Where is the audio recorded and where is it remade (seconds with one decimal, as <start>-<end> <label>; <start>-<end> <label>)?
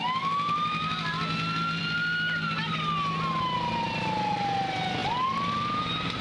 0.0-6.2 recorded